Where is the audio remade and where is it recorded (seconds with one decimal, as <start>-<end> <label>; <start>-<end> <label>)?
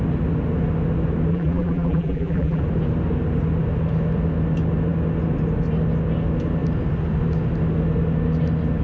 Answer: 0.0-1.3 recorded; 1.3-2.6 remade; 2.6-8.8 recorded